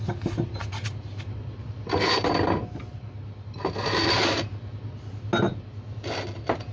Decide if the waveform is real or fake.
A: real